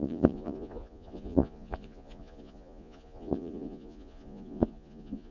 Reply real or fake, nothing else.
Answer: fake